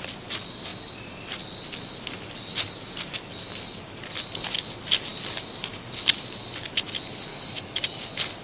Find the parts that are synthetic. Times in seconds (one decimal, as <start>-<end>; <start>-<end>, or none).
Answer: 7.3-7.8

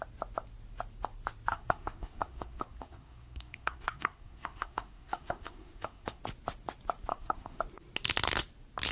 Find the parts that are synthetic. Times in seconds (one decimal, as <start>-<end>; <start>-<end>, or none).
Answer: 1.5-6.2; 7.1-7.6

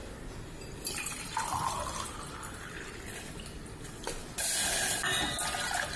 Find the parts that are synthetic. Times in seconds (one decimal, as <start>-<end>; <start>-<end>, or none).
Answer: 0.0-3.0

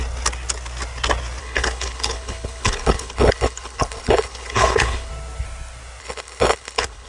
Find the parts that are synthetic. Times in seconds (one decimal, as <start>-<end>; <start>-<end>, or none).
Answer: 1.4-5.1; 6.0-7.1

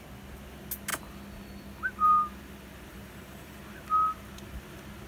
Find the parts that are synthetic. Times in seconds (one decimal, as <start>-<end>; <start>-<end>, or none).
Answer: 2.9-3.6

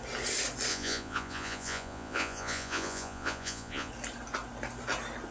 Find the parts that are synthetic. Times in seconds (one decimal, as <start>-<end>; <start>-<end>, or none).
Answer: 0.7-3.9

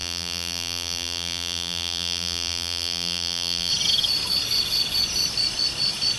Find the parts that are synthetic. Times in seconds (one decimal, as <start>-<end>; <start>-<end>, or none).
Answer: 0.0-3.7

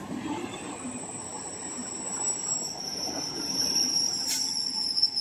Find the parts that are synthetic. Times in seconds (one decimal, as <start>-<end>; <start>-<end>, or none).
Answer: 1.3-4.4